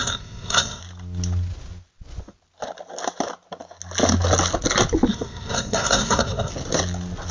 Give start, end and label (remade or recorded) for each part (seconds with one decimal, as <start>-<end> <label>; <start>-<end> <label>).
0.0-0.8 remade; 0.8-5.1 recorded; 5.1-6.5 remade; 6.5-7.3 recorded

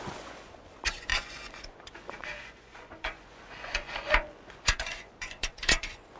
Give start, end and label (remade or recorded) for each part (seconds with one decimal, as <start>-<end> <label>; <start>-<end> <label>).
0.0-6.2 remade